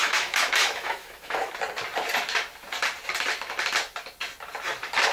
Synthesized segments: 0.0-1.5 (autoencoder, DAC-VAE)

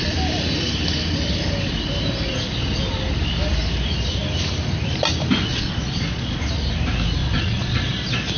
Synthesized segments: 5.5-6.4 (vocoder, Vocos); 7.2-7.8